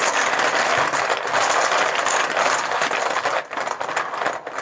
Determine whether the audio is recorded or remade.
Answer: recorded